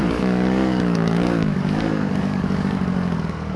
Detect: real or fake fake